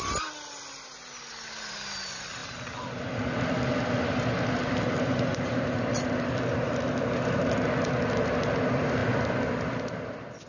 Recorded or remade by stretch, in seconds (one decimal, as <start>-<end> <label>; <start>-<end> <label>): 0.0-10.5 recorded